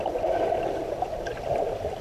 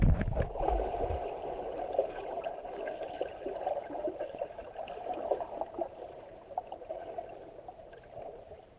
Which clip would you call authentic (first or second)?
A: first